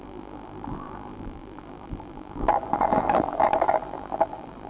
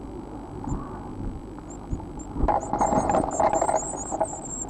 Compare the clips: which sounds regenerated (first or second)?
first